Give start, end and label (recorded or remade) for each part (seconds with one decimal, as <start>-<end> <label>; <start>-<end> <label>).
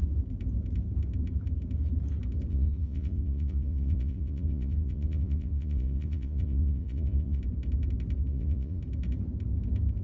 0.0-2.5 recorded; 2.5-7.4 remade; 7.4-8.3 recorded; 8.3-8.8 remade; 8.8-10.0 recorded